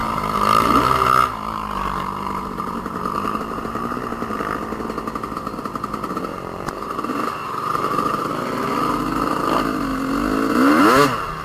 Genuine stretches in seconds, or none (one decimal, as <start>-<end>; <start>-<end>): 4.6-6.3; 8.3-11.4